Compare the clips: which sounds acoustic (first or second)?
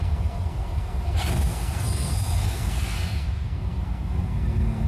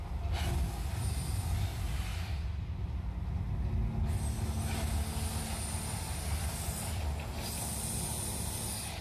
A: second